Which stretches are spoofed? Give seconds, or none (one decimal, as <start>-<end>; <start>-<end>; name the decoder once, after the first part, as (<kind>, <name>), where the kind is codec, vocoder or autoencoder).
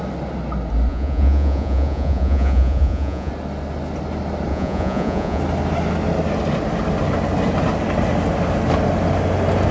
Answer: 0.9-3.3 (vocoder, Vocos); 4.5-5.4